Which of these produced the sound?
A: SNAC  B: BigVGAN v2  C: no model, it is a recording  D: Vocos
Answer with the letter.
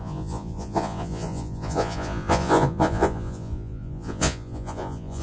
D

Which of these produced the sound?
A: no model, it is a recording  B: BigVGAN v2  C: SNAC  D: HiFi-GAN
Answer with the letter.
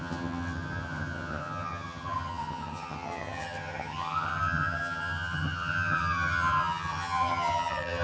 D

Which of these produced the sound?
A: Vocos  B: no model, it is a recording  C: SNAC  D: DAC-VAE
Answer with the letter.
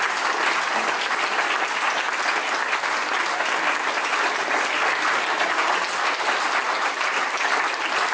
B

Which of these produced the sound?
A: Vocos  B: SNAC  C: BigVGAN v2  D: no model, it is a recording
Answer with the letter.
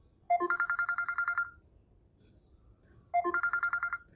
D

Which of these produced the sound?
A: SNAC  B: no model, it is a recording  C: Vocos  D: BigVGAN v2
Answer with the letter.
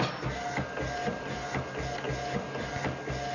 B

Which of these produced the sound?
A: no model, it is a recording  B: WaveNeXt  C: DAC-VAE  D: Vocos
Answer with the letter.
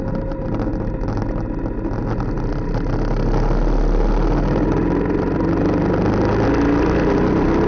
A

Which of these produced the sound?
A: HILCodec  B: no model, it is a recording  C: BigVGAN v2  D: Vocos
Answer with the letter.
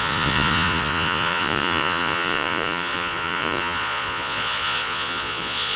D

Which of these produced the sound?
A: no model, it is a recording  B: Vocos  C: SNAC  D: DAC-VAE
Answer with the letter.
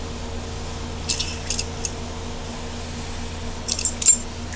A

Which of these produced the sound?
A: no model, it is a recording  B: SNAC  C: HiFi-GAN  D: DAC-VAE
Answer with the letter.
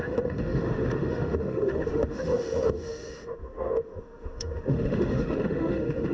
D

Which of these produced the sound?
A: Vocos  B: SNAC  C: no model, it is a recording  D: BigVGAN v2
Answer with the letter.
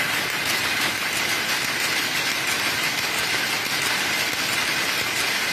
C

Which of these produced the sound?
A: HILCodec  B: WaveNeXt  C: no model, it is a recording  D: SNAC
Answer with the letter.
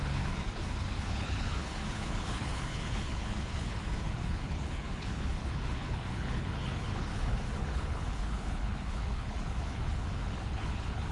A